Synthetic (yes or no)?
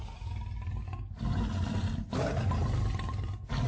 no